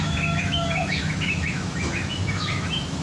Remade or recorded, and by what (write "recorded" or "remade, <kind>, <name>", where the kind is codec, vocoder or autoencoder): remade, autoencoder, DAC-VAE